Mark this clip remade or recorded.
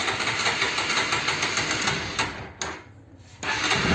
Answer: recorded